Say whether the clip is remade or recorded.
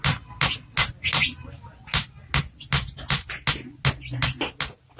recorded